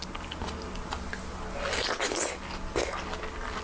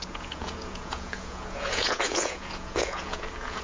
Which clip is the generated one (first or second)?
second